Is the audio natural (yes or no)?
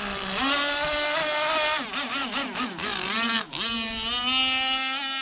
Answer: yes